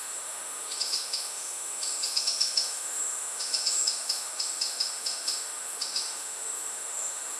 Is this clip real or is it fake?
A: fake